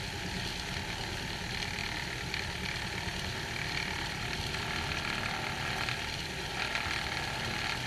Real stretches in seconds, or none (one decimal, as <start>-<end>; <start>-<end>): 0.0-7.9